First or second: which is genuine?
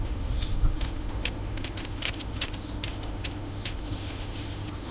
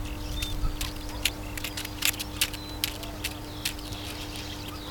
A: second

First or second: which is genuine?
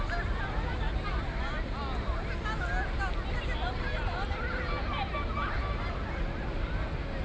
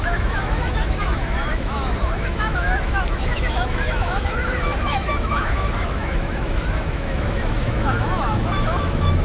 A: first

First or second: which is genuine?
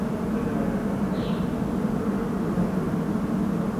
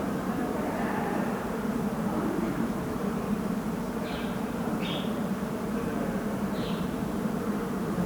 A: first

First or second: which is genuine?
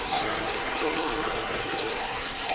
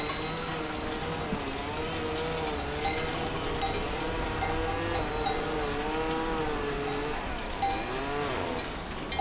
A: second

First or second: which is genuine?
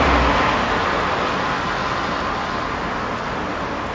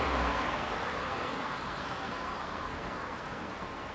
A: first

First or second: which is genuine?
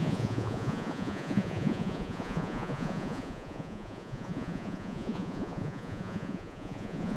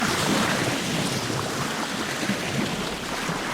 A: second